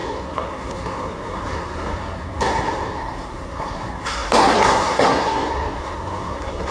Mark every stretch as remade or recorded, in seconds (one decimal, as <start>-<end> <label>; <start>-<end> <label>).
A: 0.0-6.7 remade